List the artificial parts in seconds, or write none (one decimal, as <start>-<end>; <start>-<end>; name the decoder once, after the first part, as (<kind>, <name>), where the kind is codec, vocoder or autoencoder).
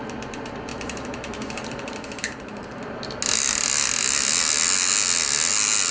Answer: 0.7-3.0 (vocoder, BigVGAN v2)